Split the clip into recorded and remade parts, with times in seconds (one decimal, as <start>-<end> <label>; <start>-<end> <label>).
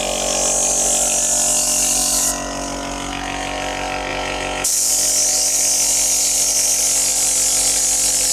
0.0-4.1 recorded; 4.1-4.9 remade; 4.9-8.3 recorded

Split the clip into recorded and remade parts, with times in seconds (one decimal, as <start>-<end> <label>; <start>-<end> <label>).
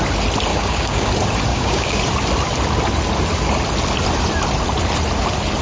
0.0-0.5 recorded; 0.5-1.1 remade; 1.1-1.5 recorded; 1.5-2.0 remade; 2.0-5.6 recorded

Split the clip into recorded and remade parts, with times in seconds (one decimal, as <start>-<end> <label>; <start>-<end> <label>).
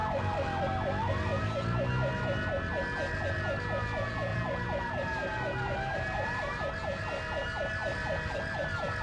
0.0-4.3 recorded; 4.3-6.6 remade; 6.6-9.0 recorded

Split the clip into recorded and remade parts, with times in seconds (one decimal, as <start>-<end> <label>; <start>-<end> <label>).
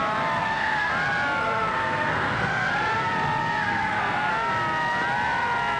0.0-0.4 recorded; 0.4-0.9 remade; 0.9-1.4 recorded; 1.4-2.7 remade; 2.7-3.4 recorded; 3.4-4.3 remade; 4.3-5.8 recorded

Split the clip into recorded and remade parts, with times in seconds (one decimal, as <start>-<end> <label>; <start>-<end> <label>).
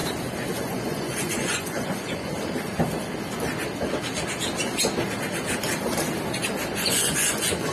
0.0-0.6 recorded; 0.6-2.3 remade; 2.3-6.7 recorded; 6.7-7.7 remade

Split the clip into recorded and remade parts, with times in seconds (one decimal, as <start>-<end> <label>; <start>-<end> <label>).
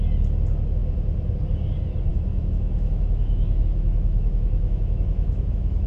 0.0-2.1 recorded; 2.1-5.9 remade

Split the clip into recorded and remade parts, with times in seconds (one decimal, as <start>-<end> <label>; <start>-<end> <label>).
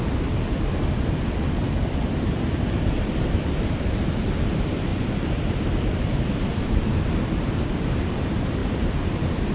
0.0-9.5 remade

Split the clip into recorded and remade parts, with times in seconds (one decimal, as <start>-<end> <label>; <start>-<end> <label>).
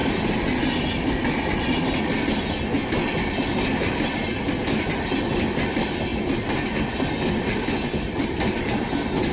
0.0-9.3 recorded